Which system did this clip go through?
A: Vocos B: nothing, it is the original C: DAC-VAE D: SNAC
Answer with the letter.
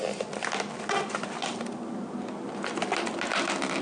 B